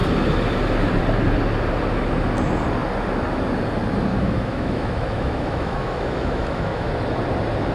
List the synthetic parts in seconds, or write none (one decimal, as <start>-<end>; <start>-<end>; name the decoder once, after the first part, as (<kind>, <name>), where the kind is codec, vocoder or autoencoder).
4.1-6.9 (autoencoder, DAC-VAE)